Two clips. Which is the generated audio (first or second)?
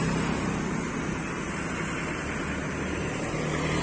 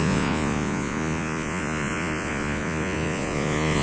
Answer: second